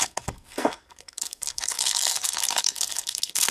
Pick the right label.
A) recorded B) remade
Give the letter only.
B